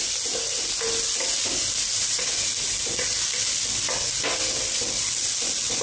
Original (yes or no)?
yes